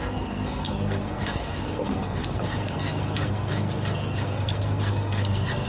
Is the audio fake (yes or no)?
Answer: yes